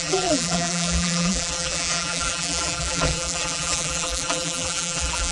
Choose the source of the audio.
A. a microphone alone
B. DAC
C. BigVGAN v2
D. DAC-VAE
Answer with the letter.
C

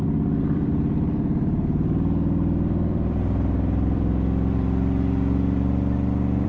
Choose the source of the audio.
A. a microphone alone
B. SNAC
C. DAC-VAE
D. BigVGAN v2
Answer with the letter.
D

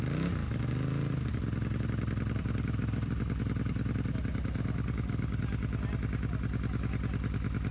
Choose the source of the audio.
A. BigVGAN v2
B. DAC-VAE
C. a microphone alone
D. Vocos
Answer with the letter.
C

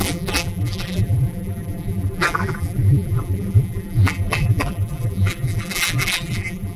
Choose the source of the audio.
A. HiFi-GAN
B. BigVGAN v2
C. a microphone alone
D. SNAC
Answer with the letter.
B